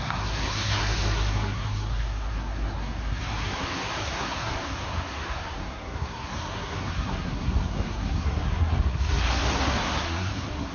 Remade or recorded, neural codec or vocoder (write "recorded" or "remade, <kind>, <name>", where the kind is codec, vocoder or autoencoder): remade, codec, SNAC